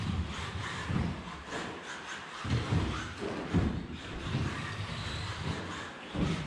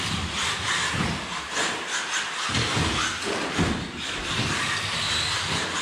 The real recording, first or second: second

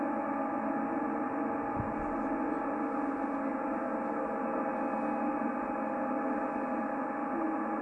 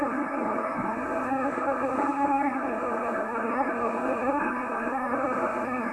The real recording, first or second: first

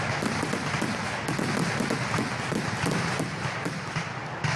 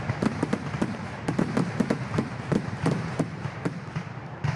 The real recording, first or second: first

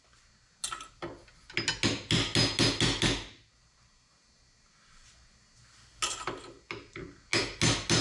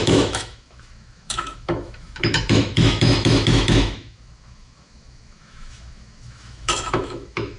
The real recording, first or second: first